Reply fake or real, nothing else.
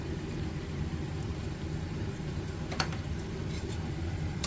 fake